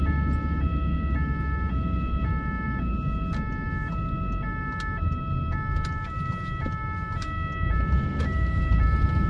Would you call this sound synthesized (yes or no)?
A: no